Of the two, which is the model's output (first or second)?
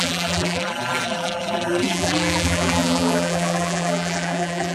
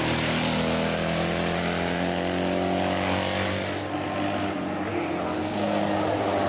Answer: first